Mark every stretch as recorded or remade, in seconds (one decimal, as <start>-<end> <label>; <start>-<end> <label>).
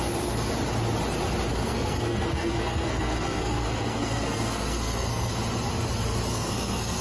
0.0-1.5 recorded; 1.5-5.3 remade; 5.3-6.3 recorded; 6.3-7.0 remade